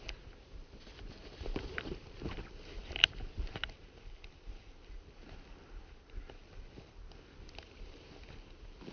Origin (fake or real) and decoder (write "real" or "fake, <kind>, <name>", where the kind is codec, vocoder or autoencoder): real